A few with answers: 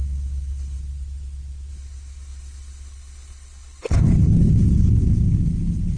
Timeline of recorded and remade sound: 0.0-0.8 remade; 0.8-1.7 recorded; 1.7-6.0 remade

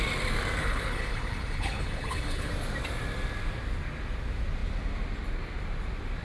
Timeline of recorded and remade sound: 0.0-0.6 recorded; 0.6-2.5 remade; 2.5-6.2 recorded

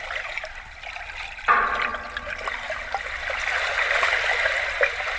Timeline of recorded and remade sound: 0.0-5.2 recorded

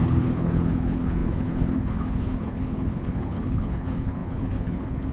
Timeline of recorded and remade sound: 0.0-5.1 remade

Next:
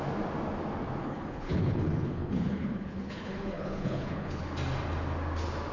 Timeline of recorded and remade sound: 0.0-1.0 recorded; 1.0-4.4 remade; 4.4-5.7 recorded

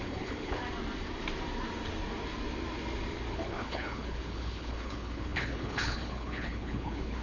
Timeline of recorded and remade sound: 0.0-0.6 remade; 0.6-3.3 recorded; 3.3-7.2 remade

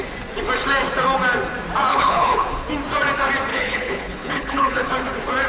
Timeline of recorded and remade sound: 0.0-1.9 recorded; 1.9-2.7 remade; 2.7-3.5 recorded; 3.5-4.9 remade; 4.9-5.5 recorded

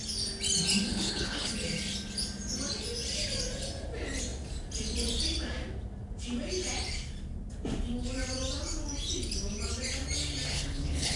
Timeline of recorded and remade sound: 0.0-0.9 recorded; 0.9-1.5 remade; 1.5-10.5 recorded; 10.5-11.2 remade